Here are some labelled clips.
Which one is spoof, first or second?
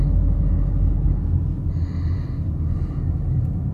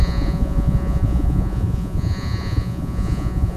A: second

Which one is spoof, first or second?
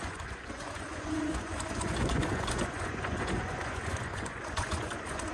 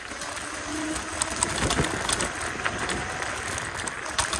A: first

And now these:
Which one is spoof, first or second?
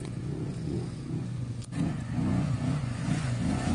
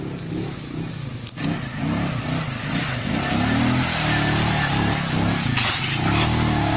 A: first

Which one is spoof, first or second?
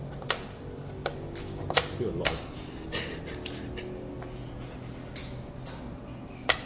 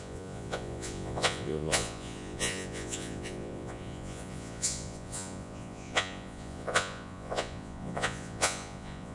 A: second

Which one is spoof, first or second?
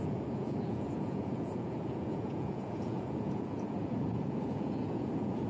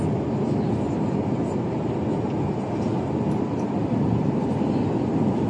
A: first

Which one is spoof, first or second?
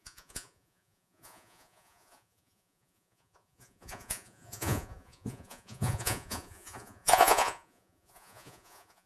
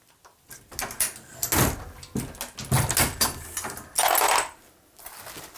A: first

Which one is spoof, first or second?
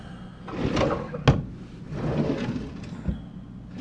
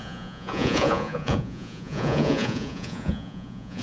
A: second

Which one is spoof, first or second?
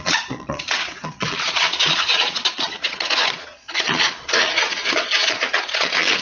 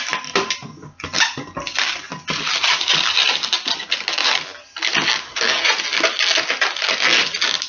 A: first